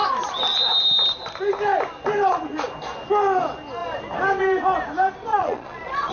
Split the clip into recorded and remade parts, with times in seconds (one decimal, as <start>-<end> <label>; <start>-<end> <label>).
0.0-5.3 recorded; 5.3-6.1 remade